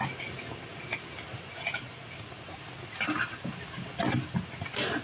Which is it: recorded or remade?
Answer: recorded